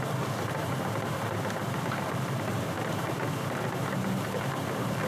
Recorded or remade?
recorded